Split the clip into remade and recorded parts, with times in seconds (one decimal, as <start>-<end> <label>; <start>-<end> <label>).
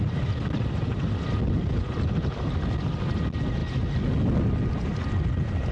0.0-5.7 recorded